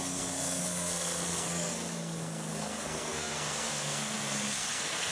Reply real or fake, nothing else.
fake